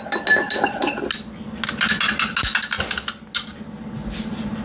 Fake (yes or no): no